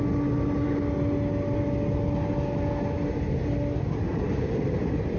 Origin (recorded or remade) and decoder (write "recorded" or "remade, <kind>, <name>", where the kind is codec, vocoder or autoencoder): recorded